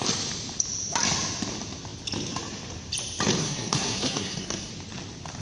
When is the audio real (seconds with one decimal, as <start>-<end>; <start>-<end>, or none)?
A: 0.0-3.4; 4.7-5.4